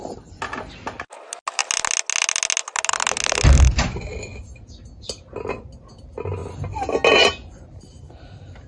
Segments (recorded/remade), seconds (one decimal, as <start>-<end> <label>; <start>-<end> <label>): 0.0-8.7 recorded